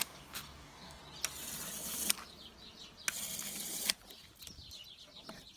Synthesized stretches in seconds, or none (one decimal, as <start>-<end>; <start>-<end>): 0.0-1.0